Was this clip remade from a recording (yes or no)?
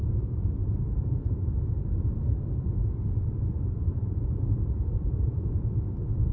yes